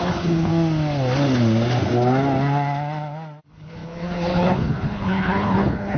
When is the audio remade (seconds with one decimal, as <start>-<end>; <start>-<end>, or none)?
0.0-0.5; 3.4-6.0